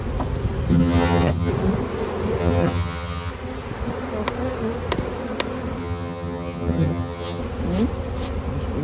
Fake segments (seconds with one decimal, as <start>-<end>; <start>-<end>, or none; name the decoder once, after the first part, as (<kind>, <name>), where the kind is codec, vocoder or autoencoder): 0.7-1.5 (vocoder, HiFi-GAN); 2.4-3.3; 5.8-7.4